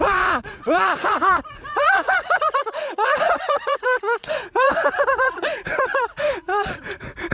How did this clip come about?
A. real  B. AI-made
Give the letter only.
B